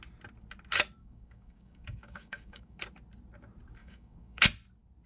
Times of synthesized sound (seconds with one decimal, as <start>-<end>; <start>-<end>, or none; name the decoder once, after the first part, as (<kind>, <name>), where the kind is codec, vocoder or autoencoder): 1.0-2.8 (codec, DAC); 3.8-4.4